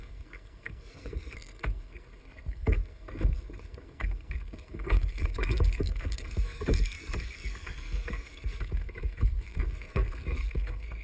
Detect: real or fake fake